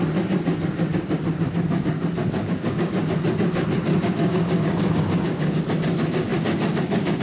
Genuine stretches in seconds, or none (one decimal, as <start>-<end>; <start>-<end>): 0.0-2.2; 2.9-3.9; 5.6-7.2